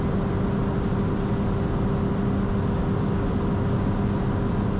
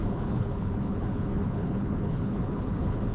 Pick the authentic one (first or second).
first